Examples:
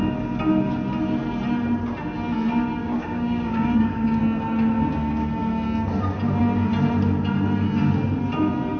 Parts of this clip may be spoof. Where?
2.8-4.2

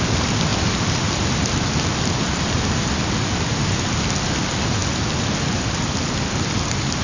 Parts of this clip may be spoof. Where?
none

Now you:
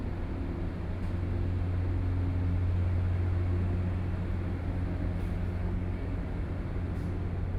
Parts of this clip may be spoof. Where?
5.6-6.1

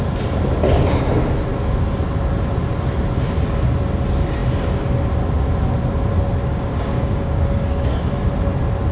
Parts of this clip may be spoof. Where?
6.5-8.0